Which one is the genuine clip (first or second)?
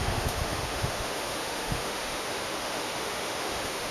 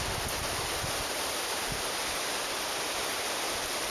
second